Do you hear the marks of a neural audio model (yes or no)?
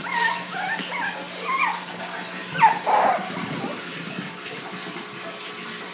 no